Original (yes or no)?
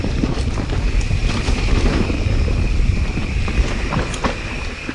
yes